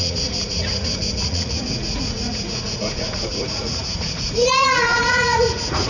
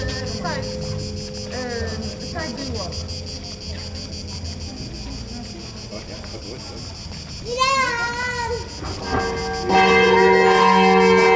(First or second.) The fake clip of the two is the first